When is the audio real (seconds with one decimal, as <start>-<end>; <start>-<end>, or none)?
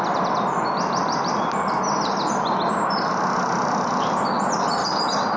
0.0-4.8